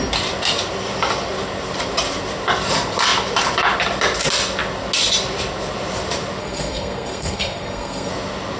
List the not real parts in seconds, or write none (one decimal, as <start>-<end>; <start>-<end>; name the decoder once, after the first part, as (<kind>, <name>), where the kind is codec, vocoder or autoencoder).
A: 6.4-8.1 (codec, SNAC)

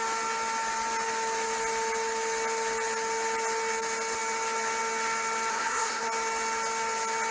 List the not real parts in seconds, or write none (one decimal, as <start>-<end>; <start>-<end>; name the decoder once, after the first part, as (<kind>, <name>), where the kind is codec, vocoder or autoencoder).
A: 5.5-6.1 (codec, SNAC)

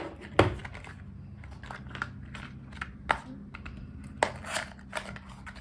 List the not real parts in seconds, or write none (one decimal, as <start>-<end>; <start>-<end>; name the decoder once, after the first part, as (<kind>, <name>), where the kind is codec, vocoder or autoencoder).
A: none